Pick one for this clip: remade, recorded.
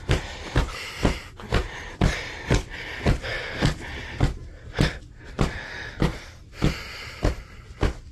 recorded